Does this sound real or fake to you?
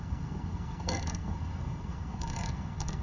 fake